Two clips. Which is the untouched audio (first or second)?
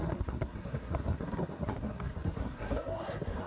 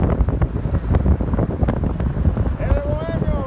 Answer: second